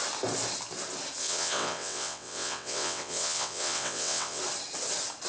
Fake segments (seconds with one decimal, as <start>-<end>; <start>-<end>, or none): 1.2-4.4